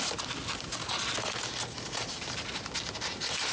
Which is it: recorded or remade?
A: recorded